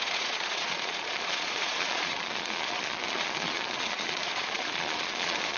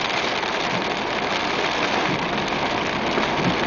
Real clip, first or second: second